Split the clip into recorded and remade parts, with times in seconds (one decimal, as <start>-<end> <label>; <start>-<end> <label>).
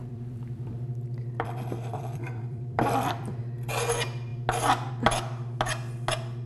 0.0-3.4 remade; 3.4-6.5 recorded